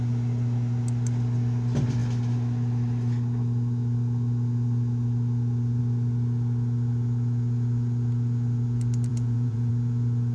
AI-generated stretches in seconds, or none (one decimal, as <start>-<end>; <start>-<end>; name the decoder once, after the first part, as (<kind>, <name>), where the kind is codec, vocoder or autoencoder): 9.1-9.7 (vocoder, Vocos)

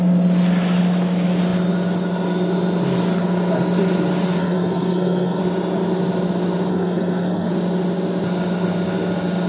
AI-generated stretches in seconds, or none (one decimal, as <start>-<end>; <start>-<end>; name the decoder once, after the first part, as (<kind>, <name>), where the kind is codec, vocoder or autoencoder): 4.4-5.4 (codec, SNAC); 6.7-7.5

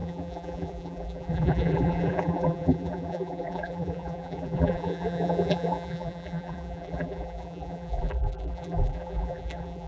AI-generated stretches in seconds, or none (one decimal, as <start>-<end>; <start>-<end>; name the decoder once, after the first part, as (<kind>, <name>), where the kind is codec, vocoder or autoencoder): 0.0-9.9 (vocoder, BigVGAN v2)

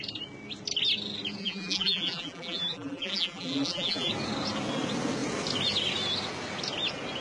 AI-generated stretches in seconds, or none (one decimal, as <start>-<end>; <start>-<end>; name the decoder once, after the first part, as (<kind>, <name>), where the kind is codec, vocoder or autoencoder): 1.4-4.1 (vocoder, BigVGAN v2)